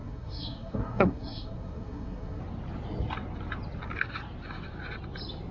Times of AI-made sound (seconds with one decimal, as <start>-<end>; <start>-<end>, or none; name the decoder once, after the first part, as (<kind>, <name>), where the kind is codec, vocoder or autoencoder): 0.0-2.4 (codec, SNAC)